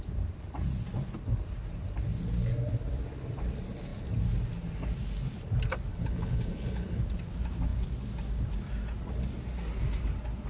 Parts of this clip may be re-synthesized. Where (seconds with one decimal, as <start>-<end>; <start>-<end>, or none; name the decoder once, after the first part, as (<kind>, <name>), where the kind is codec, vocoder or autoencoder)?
5.9-7.0 (codec, HILCodec)